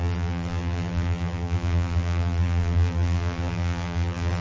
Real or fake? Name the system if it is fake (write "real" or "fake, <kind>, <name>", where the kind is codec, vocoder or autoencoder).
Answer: fake, vocoder, BigVGAN v2